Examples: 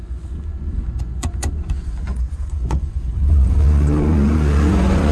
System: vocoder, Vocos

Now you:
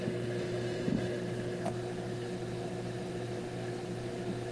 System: none